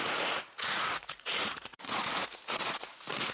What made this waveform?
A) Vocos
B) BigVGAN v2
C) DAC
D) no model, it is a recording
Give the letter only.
A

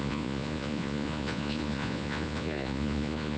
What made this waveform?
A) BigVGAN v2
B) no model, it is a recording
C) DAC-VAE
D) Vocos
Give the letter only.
D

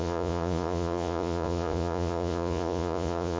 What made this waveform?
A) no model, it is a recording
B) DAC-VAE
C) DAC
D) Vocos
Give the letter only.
D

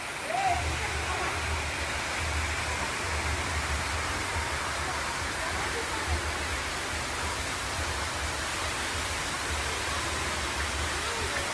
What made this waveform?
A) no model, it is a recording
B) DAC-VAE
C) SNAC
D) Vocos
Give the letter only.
A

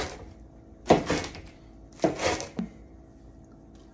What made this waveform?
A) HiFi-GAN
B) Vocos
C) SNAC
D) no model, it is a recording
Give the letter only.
D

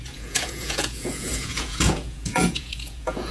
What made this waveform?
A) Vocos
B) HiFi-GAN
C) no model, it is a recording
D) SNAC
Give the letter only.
A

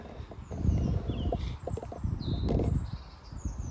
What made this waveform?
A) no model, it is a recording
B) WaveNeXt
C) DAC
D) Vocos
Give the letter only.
A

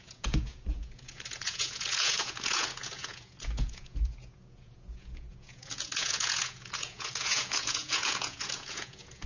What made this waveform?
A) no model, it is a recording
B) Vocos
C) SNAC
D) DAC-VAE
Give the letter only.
B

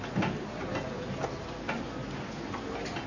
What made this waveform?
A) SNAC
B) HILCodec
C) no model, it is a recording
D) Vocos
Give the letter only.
C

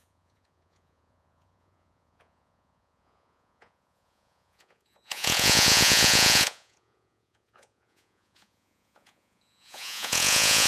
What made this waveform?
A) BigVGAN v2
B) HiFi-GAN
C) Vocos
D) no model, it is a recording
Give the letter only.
C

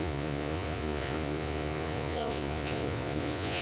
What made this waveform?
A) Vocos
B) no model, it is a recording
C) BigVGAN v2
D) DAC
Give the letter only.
A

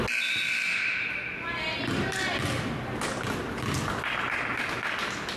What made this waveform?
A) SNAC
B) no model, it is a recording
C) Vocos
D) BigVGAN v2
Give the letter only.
B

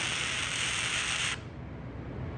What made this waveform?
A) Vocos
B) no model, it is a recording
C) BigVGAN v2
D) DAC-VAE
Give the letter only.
B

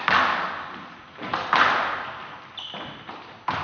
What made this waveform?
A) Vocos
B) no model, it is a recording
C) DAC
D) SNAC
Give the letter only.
B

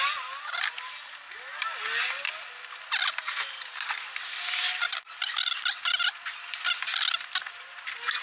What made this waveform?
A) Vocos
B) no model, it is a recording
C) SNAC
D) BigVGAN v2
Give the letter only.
B